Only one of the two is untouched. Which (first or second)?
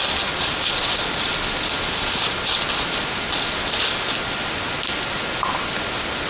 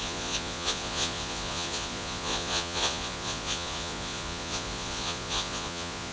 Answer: first